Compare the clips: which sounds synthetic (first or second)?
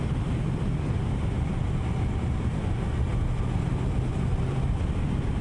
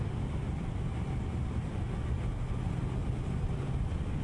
second